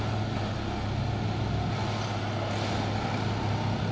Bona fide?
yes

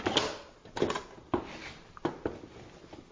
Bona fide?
yes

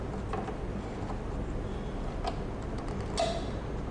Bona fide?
yes